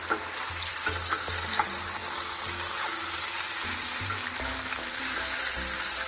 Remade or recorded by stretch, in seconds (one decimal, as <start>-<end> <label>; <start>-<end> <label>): 0.0-6.1 recorded